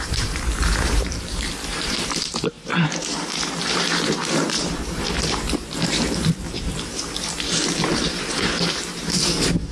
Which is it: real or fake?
fake